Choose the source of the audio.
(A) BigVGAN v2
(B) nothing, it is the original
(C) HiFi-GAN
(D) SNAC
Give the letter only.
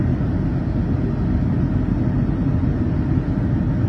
B